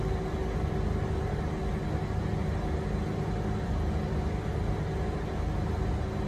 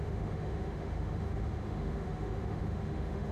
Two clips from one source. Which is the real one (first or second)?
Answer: first